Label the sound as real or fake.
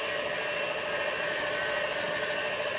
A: real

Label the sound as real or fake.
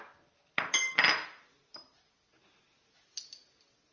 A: real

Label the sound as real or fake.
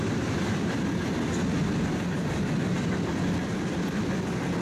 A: real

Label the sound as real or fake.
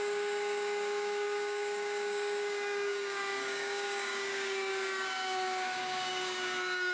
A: fake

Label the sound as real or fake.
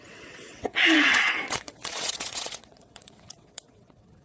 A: fake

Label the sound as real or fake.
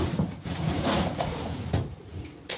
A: fake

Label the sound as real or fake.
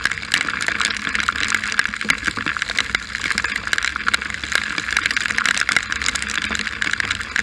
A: real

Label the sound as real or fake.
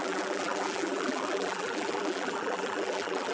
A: fake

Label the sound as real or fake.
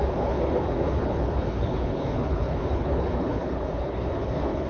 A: fake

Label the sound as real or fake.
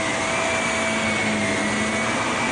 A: real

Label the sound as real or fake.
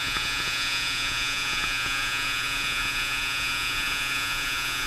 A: fake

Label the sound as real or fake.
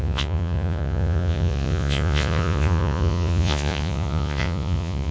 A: fake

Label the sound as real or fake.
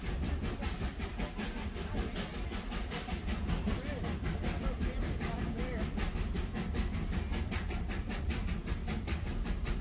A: real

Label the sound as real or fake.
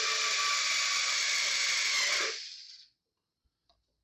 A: real